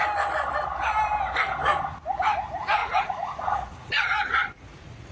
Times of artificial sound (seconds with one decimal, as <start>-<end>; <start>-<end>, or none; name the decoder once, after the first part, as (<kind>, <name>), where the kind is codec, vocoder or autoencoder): 2.8-5.1 (vocoder, Vocos)